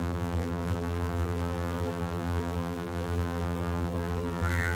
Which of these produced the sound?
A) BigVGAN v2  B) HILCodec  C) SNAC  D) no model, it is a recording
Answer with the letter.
A